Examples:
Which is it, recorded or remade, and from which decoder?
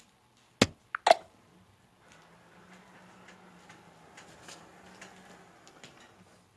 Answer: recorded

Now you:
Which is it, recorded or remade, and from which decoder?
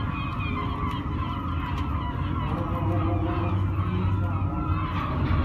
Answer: recorded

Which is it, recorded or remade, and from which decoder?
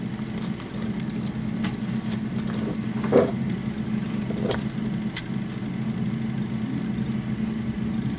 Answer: recorded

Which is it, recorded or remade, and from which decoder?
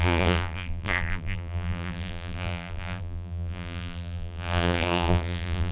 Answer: remade, vocoder, BigVGAN v2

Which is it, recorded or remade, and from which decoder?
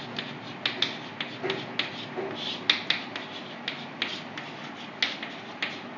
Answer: recorded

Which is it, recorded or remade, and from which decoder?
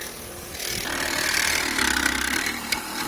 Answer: remade, vocoder, BigVGAN v2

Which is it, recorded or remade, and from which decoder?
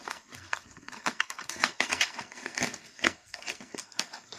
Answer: remade, codec, SNAC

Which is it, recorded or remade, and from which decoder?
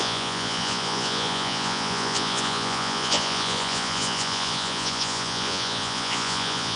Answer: remade, vocoder, Vocos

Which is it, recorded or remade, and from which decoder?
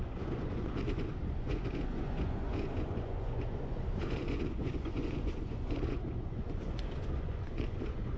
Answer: remade, vocoder, Vocos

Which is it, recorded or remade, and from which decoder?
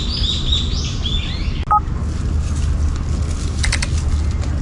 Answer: recorded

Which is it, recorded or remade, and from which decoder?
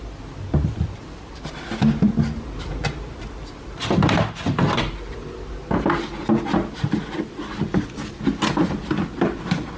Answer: recorded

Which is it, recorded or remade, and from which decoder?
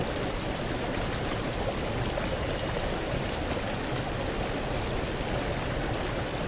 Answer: recorded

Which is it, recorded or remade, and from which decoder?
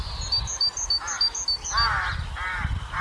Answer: recorded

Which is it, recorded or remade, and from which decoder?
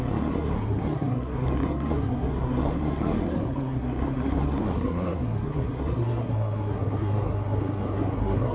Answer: remade, codec, SNAC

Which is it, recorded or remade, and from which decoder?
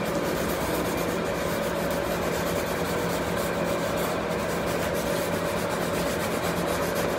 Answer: recorded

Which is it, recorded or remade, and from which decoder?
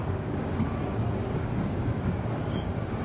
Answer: remade, codec, DAC